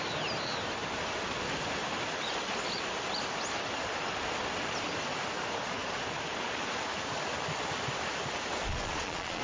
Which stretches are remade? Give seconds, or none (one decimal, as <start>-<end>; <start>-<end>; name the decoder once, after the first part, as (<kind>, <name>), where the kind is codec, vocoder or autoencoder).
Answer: 8.7-9.4 (vocoder, Vocos)